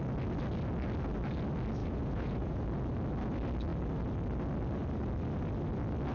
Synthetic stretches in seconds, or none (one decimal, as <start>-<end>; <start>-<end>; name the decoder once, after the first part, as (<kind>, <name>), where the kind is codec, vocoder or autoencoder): 1.8-2.6 (vocoder, Vocos)